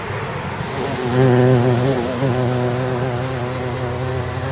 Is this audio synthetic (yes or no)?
no